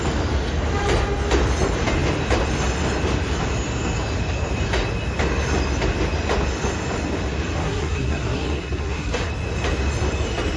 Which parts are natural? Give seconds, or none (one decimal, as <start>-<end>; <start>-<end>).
0.0-7.6; 9.3-10.6